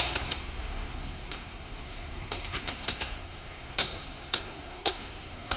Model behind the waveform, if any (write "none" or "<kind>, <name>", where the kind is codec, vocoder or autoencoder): codec, SNAC